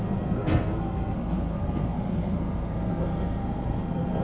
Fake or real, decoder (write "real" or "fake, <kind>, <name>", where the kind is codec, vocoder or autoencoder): fake, codec, SNAC